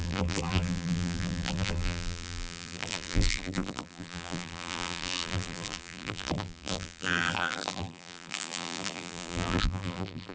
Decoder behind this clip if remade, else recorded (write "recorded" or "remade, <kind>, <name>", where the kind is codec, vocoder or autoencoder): remade, vocoder, BigVGAN v2